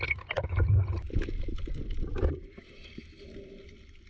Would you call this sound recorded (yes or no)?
yes